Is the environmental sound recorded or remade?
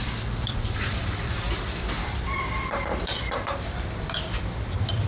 remade